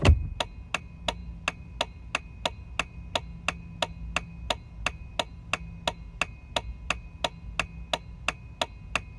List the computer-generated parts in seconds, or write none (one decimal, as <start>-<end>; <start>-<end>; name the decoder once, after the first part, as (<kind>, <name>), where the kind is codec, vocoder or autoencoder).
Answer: none